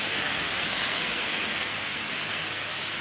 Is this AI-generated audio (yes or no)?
yes